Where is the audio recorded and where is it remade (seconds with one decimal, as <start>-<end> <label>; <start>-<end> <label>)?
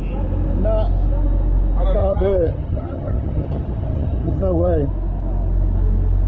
0.0-2.0 recorded; 2.0-4.9 remade; 4.9-6.3 recorded